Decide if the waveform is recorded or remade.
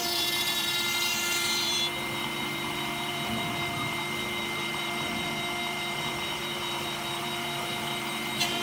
remade